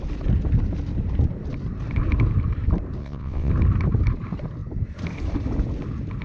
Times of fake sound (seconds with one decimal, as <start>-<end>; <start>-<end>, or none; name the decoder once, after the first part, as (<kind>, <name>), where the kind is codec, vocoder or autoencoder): 3.0-3.5 (vocoder, WaveNeXt)